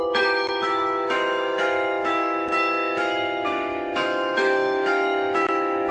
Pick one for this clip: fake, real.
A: fake